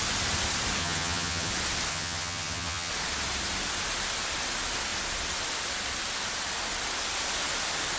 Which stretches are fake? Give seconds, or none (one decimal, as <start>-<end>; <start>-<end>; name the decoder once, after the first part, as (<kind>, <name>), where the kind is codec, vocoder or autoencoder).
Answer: 0.8-1.5 (vocoder, HiFi-GAN); 1.9-2.9